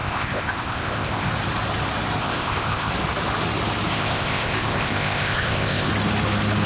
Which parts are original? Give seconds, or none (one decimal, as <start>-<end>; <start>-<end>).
1.3-2.2; 2.9-3.9; 5.9-6.7